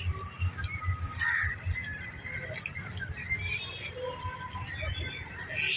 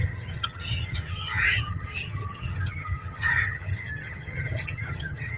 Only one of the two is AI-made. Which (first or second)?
second